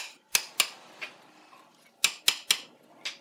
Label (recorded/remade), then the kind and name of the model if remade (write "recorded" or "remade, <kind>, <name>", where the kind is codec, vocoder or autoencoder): recorded